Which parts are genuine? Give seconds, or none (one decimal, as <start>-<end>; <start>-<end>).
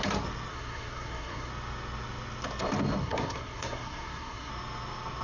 0.0-0.5; 1.5-3.0; 4.5-5.2